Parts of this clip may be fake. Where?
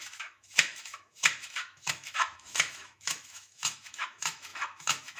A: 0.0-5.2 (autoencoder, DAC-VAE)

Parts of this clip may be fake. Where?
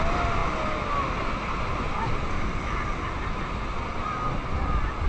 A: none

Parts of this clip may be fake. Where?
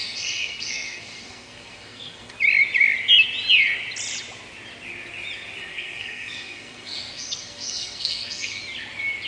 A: 0.0-2.3 (codec, SNAC); 5.7-8.6